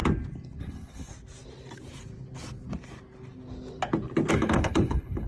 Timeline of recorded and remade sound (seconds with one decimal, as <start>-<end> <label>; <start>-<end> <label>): 0.0-0.6 recorded; 0.6-1.1 remade; 1.1-4.3 recorded; 4.3-5.3 remade